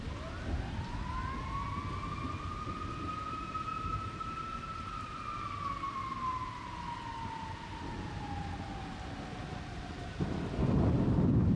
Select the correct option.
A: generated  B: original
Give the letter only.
B